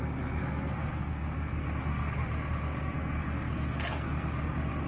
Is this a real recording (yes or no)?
no